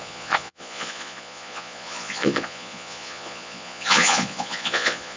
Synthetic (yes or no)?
yes